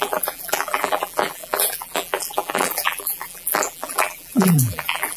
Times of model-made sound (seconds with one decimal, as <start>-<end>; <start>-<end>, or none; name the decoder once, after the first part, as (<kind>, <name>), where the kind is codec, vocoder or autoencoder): 0.0-5.2 (vocoder, BigVGAN v2)